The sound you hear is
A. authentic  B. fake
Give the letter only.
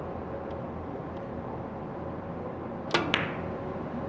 A